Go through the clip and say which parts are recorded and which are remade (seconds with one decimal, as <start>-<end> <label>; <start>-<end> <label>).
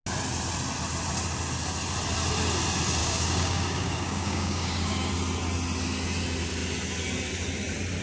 0.0-3.0 recorded; 3.0-5.1 remade; 5.1-8.0 recorded